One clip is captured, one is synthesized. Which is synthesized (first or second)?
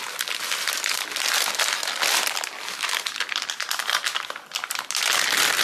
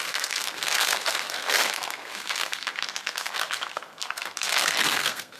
second